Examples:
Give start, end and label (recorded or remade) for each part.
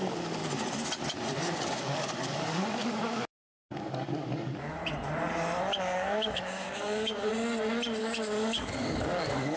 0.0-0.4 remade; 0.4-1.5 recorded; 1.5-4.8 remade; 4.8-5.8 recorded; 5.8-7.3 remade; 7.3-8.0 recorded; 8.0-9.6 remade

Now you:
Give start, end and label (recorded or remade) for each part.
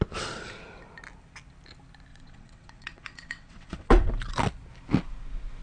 0.0-2.1 recorded; 2.1-4.1 remade; 4.1-5.6 recorded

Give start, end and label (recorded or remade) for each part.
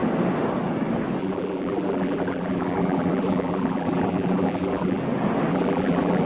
0.0-1.2 recorded; 1.2-5.0 remade; 5.0-5.5 recorded; 5.5-6.3 remade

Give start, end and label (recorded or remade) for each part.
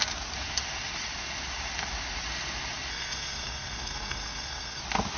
0.0-2.9 recorded; 2.9-4.8 remade; 4.8-5.2 recorded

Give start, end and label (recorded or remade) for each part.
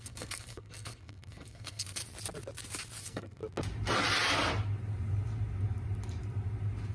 0.0-2.0 remade; 2.0-3.0 recorded; 3.0-3.4 remade; 3.4-6.9 recorded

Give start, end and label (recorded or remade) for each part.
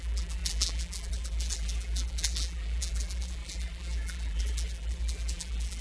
0.0-5.8 remade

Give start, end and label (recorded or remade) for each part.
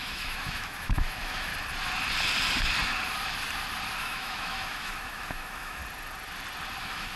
0.0-1.5 remade; 1.5-4.0 recorded; 4.0-5.8 remade; 5.8-6.8 recorded; 6.8-7.2 remade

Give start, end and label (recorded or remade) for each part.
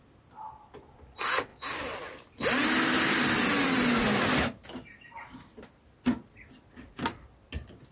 0.0-7.9 recorded